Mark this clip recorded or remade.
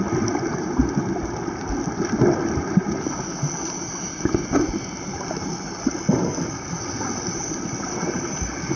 recorded